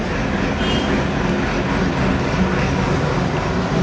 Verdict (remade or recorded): recorded